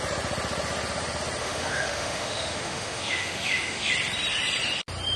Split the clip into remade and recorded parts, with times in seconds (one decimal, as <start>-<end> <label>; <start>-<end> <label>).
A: 0.0-1.4 recorded; 1.4-3.9 remade; 3.9-5.2 recorded